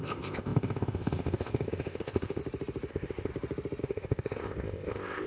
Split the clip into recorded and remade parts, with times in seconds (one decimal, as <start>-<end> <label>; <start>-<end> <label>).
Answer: 0.0-2.4 remade; 2.4-2.9 recorded; 2.9-3.3 remade; 3.3-3.8 recorded; 3.8-5.3 remade